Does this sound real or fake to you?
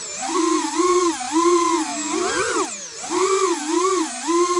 real